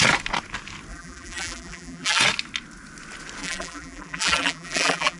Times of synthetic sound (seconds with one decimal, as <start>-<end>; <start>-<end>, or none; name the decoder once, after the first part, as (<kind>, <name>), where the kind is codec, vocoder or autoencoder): 0.9-2.2 (vocoder, BigVGAN v2); 3.4-5.2